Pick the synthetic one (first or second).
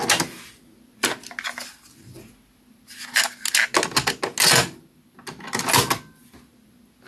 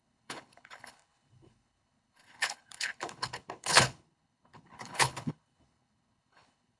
second